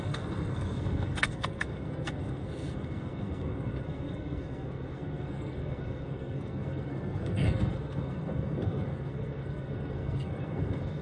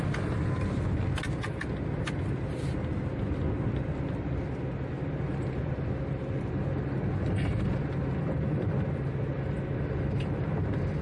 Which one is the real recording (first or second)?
second